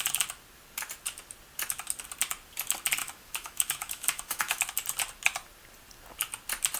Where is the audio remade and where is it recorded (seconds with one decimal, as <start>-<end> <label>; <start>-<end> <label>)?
0.0-3.0 recorded; 3.0-4.6 remade; 4.6-6.8 recorded